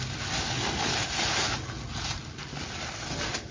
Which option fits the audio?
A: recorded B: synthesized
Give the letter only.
A